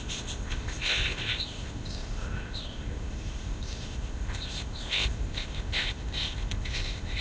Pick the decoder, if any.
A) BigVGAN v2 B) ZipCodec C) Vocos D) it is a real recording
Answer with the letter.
B